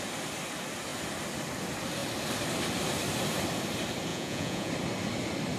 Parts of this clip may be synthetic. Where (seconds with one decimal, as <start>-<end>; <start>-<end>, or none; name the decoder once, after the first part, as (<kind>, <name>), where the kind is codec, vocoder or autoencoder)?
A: 4.1-4.7 (vocoder, Vocos)